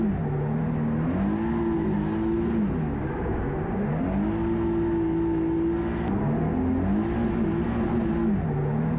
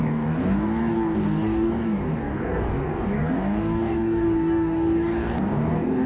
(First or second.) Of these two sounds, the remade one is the second